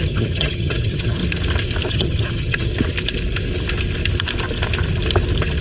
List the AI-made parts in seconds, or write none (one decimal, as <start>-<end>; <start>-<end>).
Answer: 0.0-1.2; 1.9-2.7